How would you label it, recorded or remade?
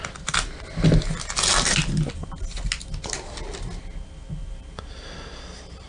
recorded